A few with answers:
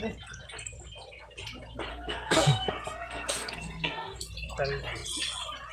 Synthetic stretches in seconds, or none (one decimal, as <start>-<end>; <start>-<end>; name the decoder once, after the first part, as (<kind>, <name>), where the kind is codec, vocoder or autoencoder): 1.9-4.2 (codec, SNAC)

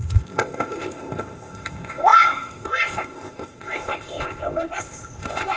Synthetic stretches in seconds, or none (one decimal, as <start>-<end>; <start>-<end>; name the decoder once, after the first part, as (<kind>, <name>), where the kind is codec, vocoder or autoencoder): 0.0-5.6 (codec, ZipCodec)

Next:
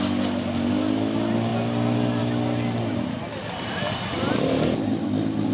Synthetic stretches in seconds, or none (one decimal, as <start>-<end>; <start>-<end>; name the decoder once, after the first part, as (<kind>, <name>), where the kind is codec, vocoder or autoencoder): none